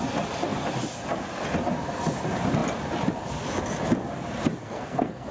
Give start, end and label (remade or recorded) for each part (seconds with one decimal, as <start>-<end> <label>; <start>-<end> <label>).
0.0-4.6 recorded; 4.6-5.3 remade